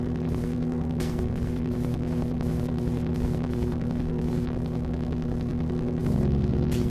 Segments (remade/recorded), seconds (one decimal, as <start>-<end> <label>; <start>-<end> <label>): 0.0-6.9 remade